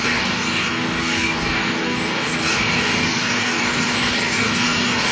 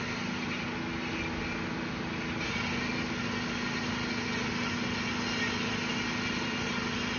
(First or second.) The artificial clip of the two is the first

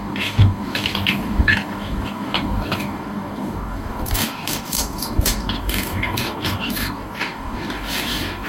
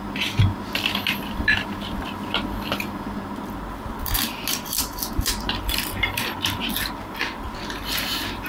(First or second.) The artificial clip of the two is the first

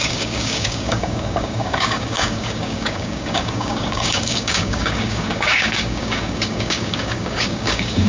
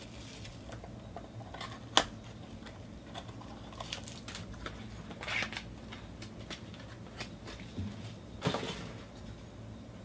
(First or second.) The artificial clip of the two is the first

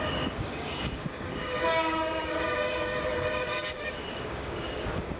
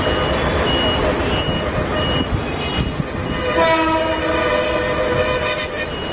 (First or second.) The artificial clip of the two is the first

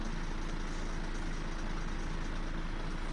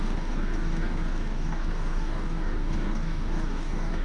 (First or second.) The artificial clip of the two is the second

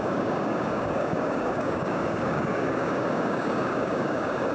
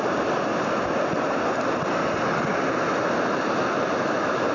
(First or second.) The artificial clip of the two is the first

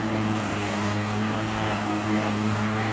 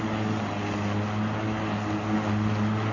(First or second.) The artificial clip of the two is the first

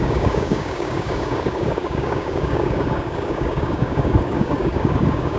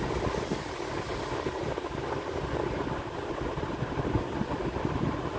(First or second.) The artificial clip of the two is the first